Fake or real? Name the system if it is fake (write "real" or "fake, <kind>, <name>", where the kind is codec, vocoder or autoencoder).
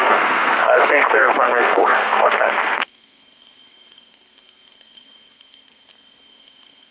fake, codec, SNAC